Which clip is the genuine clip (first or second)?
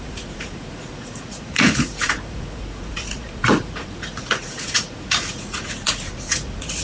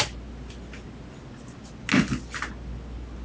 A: second